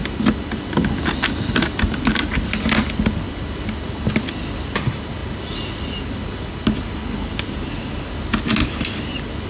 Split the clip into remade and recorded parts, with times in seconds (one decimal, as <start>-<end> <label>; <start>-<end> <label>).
0.0-9.5 recorded